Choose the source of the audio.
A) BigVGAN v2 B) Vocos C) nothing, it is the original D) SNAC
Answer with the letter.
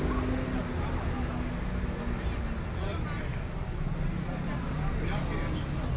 C